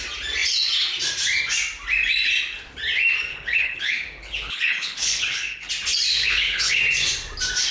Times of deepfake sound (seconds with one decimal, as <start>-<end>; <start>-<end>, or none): 3.3-5.7; 6.2-6.8